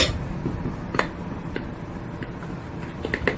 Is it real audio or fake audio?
real